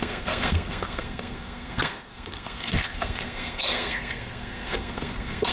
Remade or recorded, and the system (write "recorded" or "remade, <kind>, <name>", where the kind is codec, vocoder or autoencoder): remade, codec, SNAC